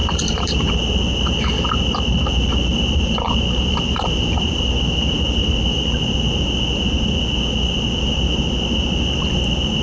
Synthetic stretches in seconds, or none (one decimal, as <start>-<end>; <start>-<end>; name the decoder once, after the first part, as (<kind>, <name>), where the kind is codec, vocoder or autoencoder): 0.0-0.7 (vocoder, BigVGAN v2); 2.7-4.7; 5.4-6.0